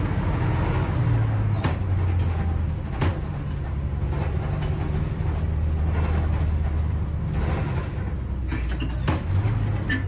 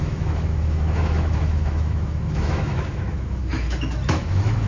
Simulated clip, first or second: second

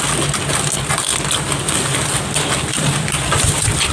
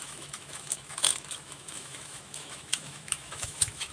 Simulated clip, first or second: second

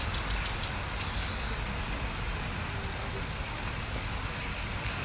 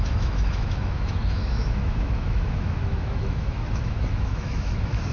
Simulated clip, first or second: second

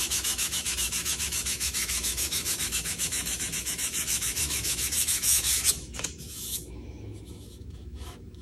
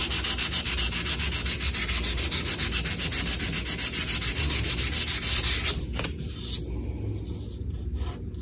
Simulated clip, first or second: first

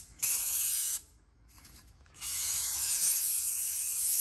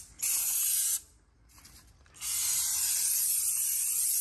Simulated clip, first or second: first